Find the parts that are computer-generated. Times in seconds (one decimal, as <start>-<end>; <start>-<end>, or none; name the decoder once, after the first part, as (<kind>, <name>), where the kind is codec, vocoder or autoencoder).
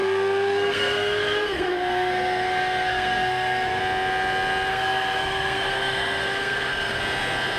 0.0-3.8 (codec, SNAC); 4.7-7.0